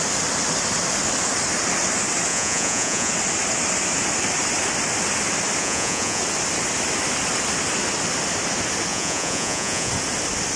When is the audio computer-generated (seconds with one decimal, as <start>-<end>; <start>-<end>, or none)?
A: 2.3-3.1; 5.6-6.2; 8.9-9.9